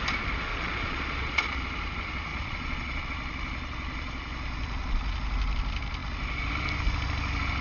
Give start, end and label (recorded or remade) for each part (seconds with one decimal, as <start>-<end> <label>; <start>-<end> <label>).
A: 0.0-0.5 recorded; 0.5-1.6 remade; 1.6-2.3 recorded; 2.3-3.0 remade; 3.0-7.6 recorded